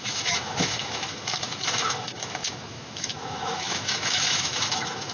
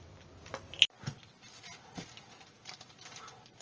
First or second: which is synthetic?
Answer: first